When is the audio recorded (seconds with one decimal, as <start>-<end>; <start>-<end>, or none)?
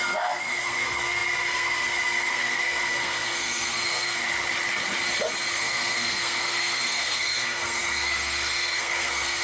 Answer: 4.2-5.5